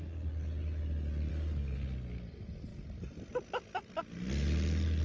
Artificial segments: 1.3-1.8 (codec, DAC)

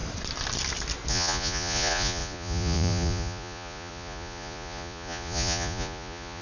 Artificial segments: 1.1-6.4 (vocoder, Vocos)

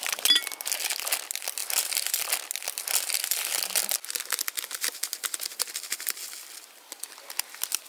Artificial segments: 1.6-2.3 (vocoder, BigVGAN v2)

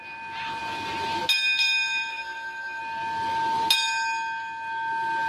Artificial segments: 2.1-2.8 (autoencoder, DAC-VAE)

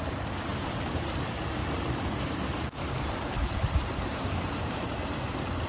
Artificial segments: 0.5-1.1 (vocoder, BigVGAN v2); 1.6-5.0